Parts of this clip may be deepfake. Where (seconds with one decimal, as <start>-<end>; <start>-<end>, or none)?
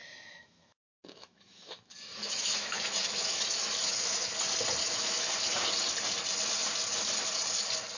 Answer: 0.0-4.3; 4.8-5.3